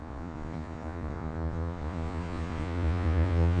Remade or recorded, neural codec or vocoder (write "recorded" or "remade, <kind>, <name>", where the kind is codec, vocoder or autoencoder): remade, vocoder, Vocos